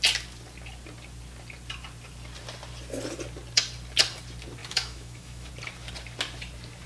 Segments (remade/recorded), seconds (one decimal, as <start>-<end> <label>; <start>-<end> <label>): 0.0-4.6 recorded; 4.6-5.5 remade; 5.5-6.9 recorded